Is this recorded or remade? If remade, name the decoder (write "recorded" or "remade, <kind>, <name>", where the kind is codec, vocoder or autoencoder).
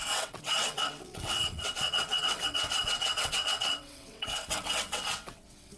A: remade, vocoder, WaveNeXt